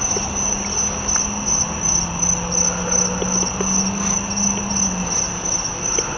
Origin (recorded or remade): recorded